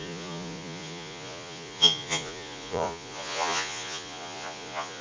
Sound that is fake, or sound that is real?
fake